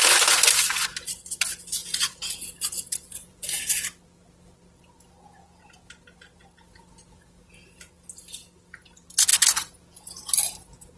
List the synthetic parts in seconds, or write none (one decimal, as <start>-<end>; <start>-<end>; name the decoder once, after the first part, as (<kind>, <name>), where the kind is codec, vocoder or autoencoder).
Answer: 1.8-3.7 (vocoder, Vocos); 9.3-10.3